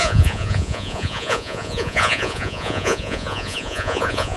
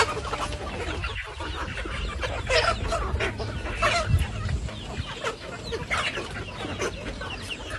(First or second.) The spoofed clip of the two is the first